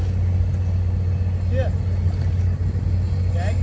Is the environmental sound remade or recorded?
recorded